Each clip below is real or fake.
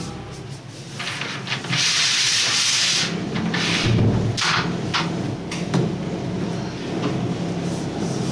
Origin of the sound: real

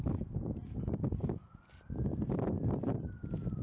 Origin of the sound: real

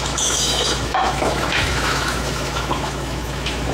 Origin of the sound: fake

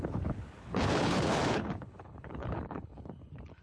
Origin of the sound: fake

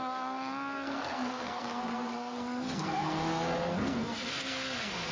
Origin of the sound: fake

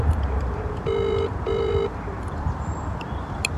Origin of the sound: fake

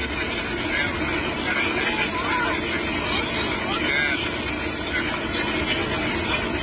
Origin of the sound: real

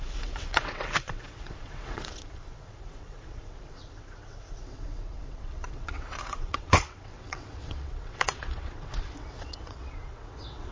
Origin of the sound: fake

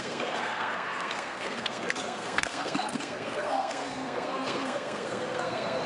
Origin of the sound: fake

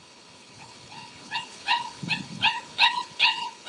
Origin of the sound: fake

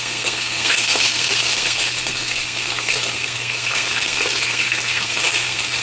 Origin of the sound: fake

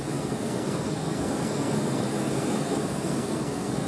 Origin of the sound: fake